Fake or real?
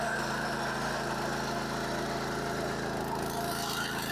real